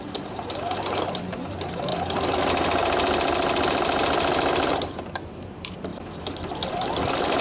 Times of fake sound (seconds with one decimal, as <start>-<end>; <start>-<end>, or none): 0.0-1.9; 4.7-5.9; 6.7-7.4